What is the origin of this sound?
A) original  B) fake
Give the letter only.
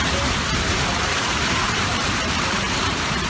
B